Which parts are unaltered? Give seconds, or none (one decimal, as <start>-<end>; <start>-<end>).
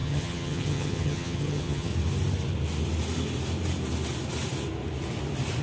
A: 1.9-5.6